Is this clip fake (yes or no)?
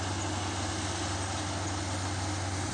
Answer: no